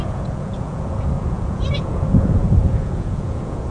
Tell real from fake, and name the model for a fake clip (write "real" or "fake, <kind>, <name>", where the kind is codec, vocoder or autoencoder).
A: fake, vocoder, Vocos